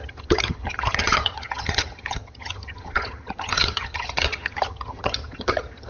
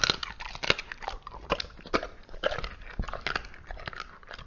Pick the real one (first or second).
second